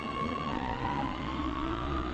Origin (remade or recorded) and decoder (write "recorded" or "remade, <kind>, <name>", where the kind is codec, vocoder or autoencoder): remade, vocoder, Vocos